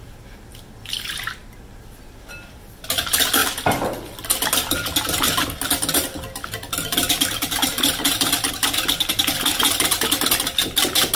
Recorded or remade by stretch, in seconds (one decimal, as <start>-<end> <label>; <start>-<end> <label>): 0.0-11.2 recorded